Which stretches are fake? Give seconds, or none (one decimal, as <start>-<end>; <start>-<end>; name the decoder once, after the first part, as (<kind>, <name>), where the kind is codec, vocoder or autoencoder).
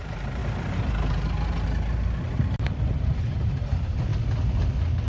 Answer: 0.0-0.4 (vocoder, BigVGAN v2); 3.2-4.1